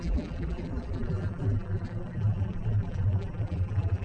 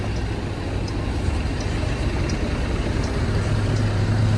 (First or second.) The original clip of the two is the second